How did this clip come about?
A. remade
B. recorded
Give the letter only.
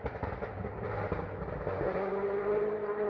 B